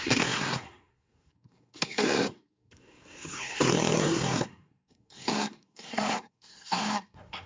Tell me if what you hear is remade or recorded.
remade